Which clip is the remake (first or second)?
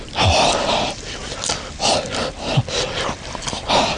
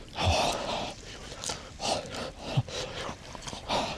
second